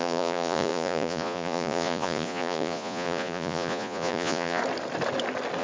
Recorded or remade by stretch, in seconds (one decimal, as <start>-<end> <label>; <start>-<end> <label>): 0.0-4.6 remade; 4.6-5.6 recorded